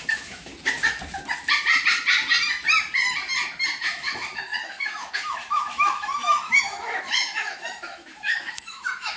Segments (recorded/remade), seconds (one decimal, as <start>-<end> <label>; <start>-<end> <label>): 0.0-0.5 remade; 0.5-3.8 recorded; 3.8-9.2 remade